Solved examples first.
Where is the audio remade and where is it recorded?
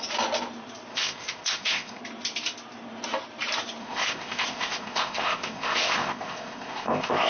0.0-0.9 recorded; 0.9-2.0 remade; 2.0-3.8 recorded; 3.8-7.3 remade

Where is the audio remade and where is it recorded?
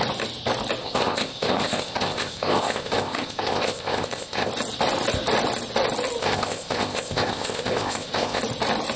0.0-0.8 recorded; 0.8-4.5 remade; 4.5-6.2 recorded; 6.2-8.4 remade; 8.4-9.0 recorded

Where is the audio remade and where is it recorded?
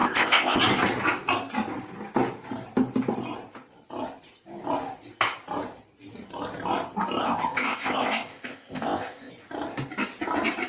0.0-0.6 remade; 0.6-7.2 recorded; 7.2-9.3 remade; 9.3-10.7 recorded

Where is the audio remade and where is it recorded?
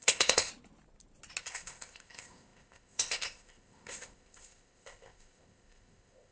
0.0-0.5 remade; 0.5-1.4 recorded; 1.4-6.3 remade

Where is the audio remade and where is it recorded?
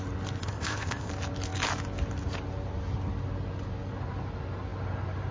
0.0-0.4 recorded; 0.4-1.1 remade; 1.1-5.3 recorded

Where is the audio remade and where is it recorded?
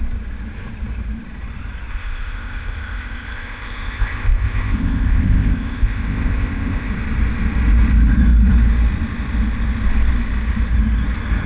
0.0-1.9 recorded; 1.9-6.9 remade; 6.9-11.5 recorded